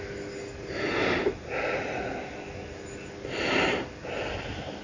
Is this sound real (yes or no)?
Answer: yes